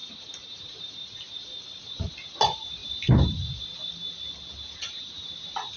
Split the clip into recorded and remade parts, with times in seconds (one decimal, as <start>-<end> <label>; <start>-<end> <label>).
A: 0.0-5.8 recorded